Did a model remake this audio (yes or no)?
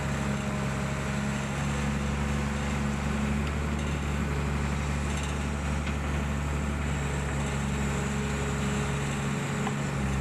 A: no